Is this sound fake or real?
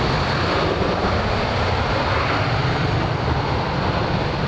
real